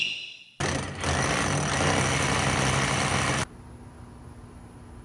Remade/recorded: recorded